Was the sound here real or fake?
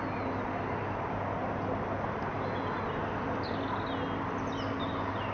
real